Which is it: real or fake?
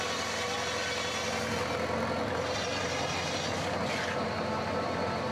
real